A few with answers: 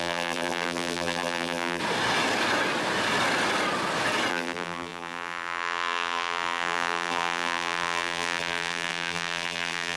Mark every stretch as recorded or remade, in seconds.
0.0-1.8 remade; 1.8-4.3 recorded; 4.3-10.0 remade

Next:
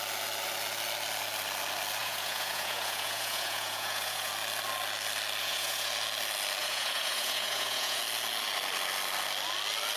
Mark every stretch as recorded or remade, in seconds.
0.0-2.0 recorded; 2.0-4.3 remade; 4.3-5.4 recorded; 5.4-5.9 remade; 5.9-6.6 recorded; 6.6-8.0 remade; 8.0-10.0 recorded

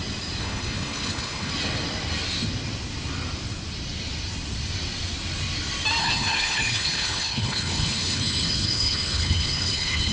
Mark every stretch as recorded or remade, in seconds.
0.0-0.4 recorded; 0.4-1.5 remade; 1.5-6.0 recorded; 6.0-10.1 remade

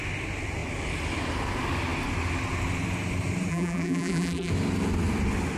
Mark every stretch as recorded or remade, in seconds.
0.0-3.5 recorded; 3.5-4.5 remade; 4.5-5.6 recorded